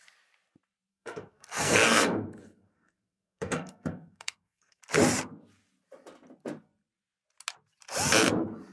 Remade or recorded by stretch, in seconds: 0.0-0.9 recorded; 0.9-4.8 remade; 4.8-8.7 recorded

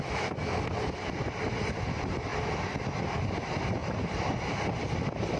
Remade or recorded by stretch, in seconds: 0.0-3.8 recorded; 3.8-4.3 remade; 4.3-5.4 recorded

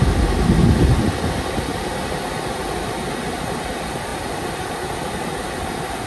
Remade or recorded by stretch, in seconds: 0.0-6.1 recorded

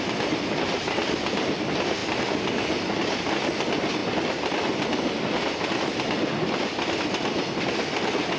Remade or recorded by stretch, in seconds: 0.0-8.4 recorded

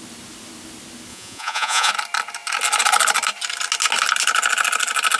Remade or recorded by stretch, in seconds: 0.0-1.1 recorded; 1.1-1.9 remade; 1.9-5.2 recorded

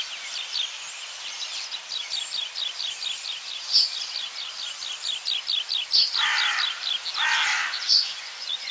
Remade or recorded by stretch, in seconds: 0.0-7.5 recorded; 7.5-8.7 remade